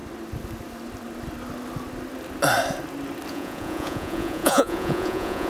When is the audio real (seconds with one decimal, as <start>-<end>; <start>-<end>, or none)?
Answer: 0.0-3.3